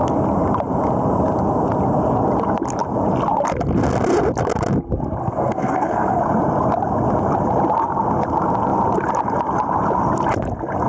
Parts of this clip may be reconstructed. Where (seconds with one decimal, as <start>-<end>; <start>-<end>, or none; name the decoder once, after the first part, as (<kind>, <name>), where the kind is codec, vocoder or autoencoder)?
5.2-6.2 (codec, SNAC)